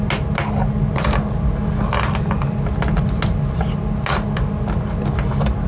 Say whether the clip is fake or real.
real